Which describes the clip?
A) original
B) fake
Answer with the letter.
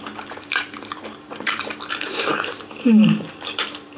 B